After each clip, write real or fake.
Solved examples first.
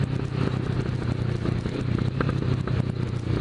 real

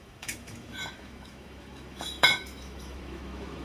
fake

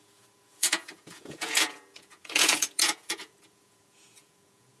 fake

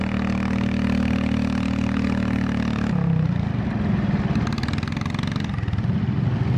real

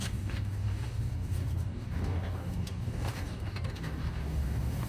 fake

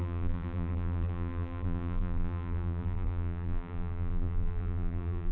fake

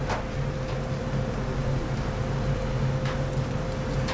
real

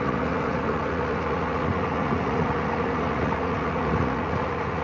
fake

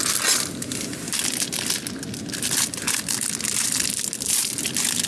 real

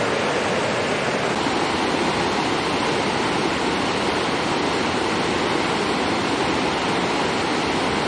real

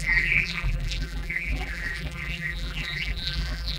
fake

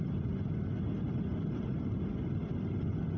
real